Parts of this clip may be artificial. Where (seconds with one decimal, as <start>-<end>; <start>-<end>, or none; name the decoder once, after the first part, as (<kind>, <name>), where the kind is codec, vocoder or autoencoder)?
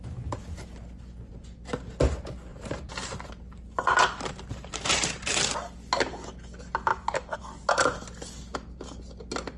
2.5-5.5 (vocoder, BigVGAN v2); 6.9-7.4